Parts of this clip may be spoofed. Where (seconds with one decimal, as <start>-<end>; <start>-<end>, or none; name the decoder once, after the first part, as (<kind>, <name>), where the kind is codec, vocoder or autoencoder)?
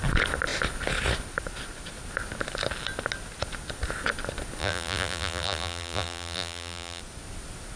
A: 4.6-7.0 (vocoder, BigVGAN v2)